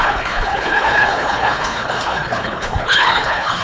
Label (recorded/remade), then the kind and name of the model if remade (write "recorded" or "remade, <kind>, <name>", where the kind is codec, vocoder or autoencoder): remade, codec, HILCodec